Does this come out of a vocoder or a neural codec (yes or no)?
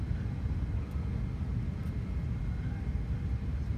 no